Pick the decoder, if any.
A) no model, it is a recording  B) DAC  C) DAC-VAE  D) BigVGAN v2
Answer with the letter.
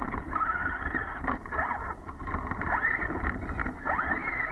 D